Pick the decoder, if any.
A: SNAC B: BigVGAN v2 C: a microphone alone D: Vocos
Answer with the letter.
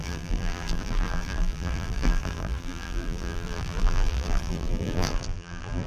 B